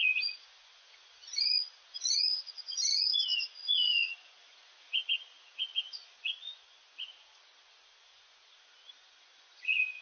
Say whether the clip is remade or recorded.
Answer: remade